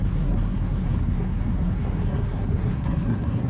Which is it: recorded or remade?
remade